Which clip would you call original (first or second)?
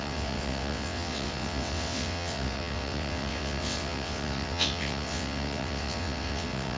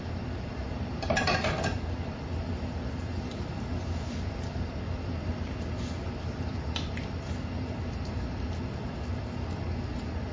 second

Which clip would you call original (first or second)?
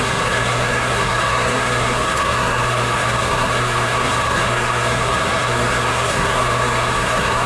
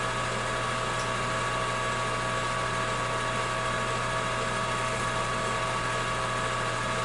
second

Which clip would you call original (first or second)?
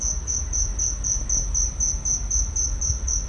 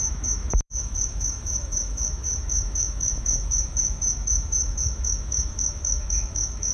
first